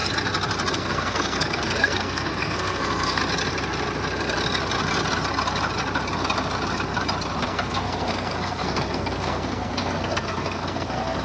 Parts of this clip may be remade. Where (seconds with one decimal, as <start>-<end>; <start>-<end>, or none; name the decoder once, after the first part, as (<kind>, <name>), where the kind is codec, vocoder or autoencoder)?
0.7-3.2 (codec, SNAC); 7.4-11.2